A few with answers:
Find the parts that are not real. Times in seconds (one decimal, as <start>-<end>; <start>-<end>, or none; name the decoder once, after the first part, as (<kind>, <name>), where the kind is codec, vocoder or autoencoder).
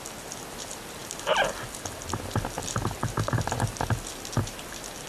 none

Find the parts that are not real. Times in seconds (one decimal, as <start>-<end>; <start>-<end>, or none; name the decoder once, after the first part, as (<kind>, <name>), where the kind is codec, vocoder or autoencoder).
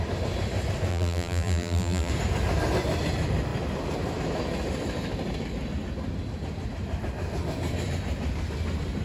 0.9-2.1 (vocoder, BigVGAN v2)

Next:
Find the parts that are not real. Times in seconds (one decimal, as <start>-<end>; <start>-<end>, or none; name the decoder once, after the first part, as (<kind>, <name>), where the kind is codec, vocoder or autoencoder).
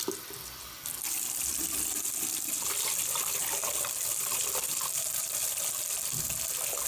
1.5-5.6 (vocoder, BigVGAN v2)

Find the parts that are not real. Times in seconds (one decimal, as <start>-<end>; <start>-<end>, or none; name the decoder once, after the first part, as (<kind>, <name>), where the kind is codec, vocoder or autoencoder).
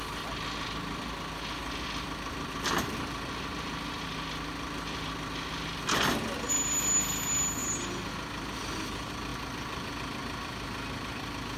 1.6-3.0 (vocoder, BigVGAN v2); 9.3-9.9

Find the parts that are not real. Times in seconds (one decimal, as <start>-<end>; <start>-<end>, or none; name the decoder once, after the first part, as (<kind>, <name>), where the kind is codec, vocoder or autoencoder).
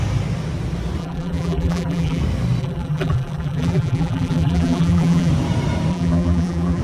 1.0-2.2 (vocoder, BigVGAN v2); 2.6-5.3; 5.9-6.8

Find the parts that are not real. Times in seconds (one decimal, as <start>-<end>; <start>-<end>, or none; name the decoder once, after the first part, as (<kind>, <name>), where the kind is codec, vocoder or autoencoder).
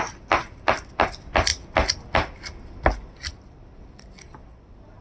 none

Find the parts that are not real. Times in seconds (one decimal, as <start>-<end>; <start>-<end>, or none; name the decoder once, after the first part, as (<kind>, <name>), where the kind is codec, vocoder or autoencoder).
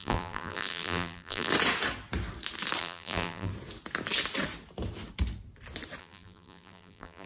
0.0-1.5 (vocoder, BigVGAN v2); 2.8-3.5; 6.0-7.3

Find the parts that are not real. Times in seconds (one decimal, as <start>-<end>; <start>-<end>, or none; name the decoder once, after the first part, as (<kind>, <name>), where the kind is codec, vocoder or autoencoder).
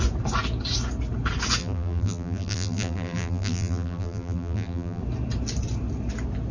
1.6-5.0 (vocoder, BigVGAN v2)